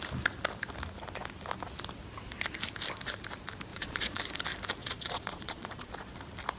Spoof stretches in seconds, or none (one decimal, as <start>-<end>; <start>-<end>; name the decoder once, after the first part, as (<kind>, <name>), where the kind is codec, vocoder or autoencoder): 3.7-4.2 (vocoder, Vocos); 4.8-5.9